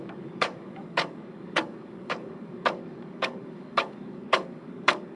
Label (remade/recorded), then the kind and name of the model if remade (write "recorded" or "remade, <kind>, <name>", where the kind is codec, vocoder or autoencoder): remade, codec, DAC